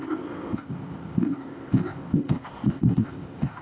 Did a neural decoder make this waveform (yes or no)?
yes